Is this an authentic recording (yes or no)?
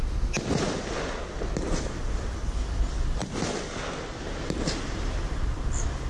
yes